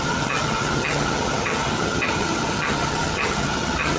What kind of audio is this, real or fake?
fake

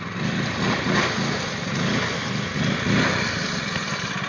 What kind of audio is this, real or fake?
real